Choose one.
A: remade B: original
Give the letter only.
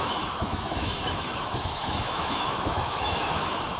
A